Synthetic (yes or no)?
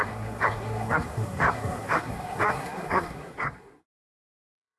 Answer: yes